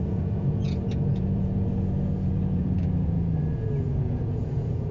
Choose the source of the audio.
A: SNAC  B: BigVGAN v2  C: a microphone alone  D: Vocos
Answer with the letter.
D